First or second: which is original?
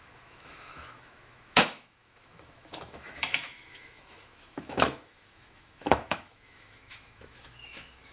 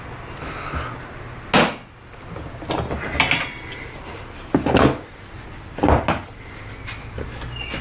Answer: second